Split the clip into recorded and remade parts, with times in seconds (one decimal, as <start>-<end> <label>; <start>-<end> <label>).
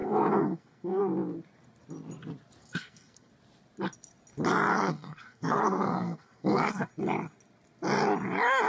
0.0-1.0 remade; 1.0-2.6 recorded; 2.6-3.3 remade; 3.3-4.7 recorded; 4.7-6.9 remade; 6.9-8.7 recorded